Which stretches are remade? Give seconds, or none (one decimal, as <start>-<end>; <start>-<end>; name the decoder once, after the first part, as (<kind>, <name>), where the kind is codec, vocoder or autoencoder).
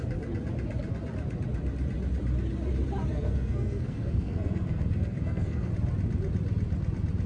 3.1-5.7 (codec, SNAC)